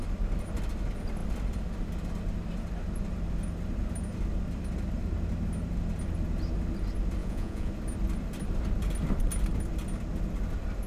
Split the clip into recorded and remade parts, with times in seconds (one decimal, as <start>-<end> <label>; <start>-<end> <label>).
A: 0.0-7.2 recorded; 7.2-7.7 remade; 7.7-10.9 recorded